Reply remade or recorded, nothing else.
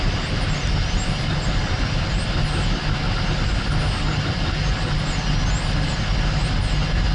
recorded